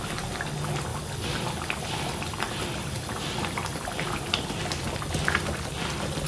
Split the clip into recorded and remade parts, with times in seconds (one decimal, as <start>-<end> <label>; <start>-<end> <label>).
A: 0.0-0.9 recorded; 0.9-4.5 remade; 4.5-6.3 recorded